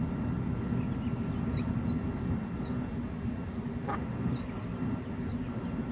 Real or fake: real